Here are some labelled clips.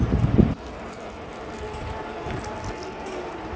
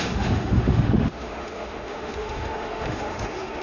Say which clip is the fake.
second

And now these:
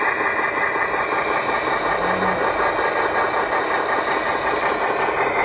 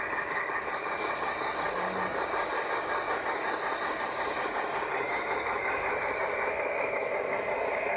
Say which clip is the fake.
second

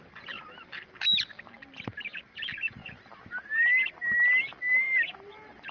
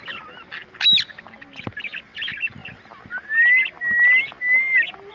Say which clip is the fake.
first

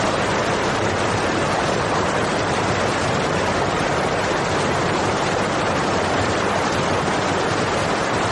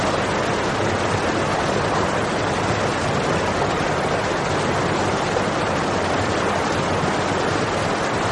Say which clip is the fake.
first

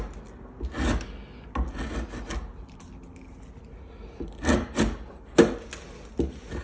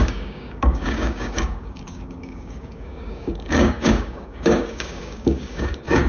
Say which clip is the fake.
second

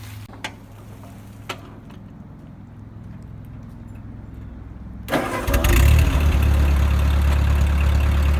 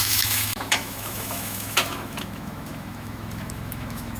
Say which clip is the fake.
second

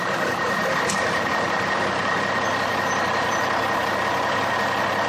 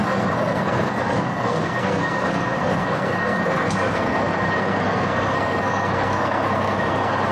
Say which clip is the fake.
second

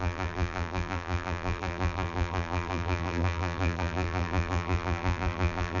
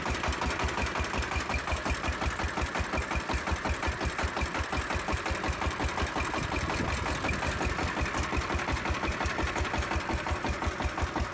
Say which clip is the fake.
first